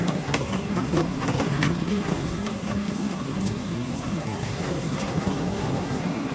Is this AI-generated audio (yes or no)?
yes